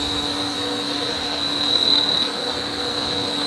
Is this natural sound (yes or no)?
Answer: no